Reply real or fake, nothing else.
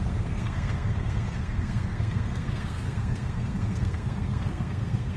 fake